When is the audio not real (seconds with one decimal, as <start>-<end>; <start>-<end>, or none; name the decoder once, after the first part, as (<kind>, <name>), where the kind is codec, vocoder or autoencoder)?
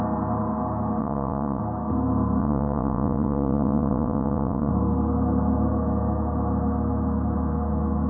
1.0-1.6 (vocoder, WaveNeXt); 2.4-4.7